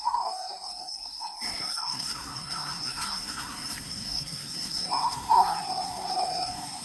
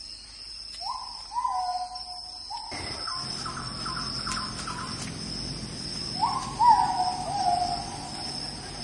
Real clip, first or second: second